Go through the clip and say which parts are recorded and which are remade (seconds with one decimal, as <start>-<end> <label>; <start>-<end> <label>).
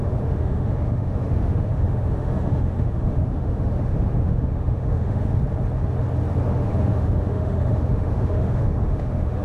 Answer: 0.0-5.3 remade; 5.3-6.4 recorded; 6.4-9.4 remade